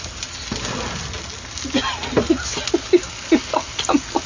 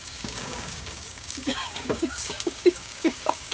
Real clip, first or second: first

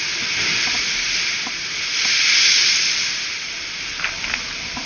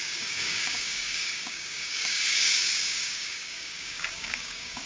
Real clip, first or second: first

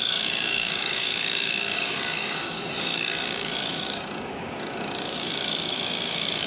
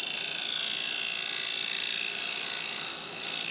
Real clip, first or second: second